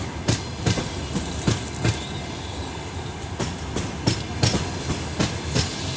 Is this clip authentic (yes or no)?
yes